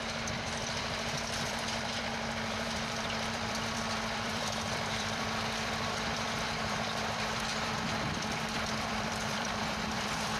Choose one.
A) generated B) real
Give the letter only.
A